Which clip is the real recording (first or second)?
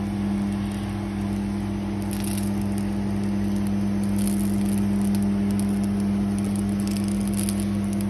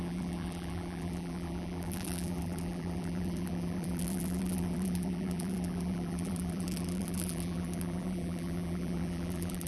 first